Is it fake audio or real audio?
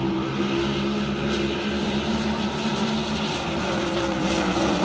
real